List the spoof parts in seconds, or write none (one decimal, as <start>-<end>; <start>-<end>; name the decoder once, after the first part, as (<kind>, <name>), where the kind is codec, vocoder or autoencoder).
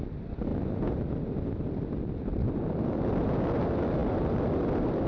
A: none